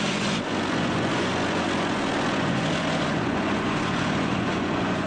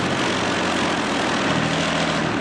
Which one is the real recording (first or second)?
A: second